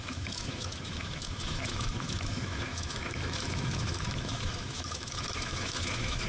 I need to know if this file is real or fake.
fake